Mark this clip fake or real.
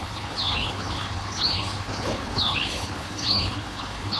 fake